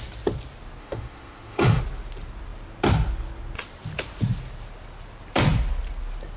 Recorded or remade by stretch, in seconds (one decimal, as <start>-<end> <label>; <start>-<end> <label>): 0.0-0.8 recorded; 0.8-1.8 remade; 1.8-6.4 recorded